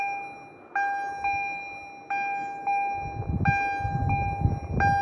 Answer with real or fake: real